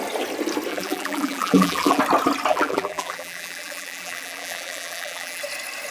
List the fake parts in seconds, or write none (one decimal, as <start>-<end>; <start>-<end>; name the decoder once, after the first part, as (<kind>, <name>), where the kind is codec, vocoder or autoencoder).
0.7-2.0 (vocoder, BigVGAN v2); 2.5-5.4